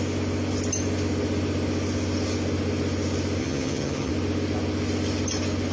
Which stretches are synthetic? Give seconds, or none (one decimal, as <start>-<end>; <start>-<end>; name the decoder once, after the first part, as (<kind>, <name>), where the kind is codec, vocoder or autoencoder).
3.4-4.1 (vocoder, HiFi-GAN)